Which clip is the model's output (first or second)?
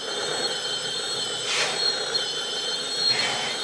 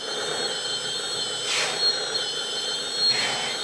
first